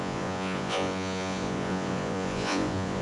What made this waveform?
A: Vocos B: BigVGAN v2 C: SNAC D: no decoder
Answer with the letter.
A